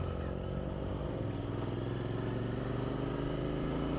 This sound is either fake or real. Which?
real